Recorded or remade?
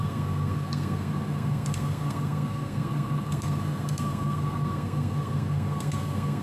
remade